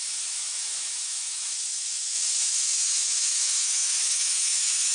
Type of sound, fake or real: fake